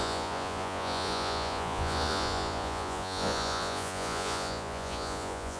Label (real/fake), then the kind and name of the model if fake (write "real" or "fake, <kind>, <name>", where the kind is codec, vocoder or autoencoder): fake, vocoder, Vocos